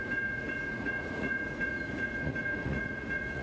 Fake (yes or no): yes